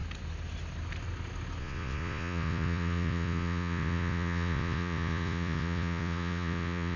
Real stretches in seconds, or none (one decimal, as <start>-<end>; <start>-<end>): 0.0-1.6